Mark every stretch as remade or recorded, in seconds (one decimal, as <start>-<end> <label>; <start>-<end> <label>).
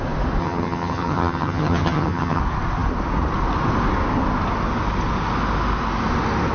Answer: 0.0-0.4 recorded; 0.4-2.4 remade; 2.4-6.5 recorded